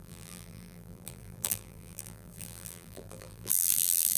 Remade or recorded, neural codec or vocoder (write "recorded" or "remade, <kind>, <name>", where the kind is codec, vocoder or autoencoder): remade, vocoder, BigVGAN v2